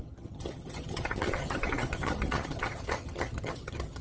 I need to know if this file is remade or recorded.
remade